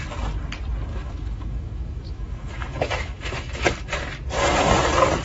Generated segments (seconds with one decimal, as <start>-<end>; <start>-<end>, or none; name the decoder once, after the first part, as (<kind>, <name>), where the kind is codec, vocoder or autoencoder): 0.9-4.0 (autoencoder, DAC-VAE)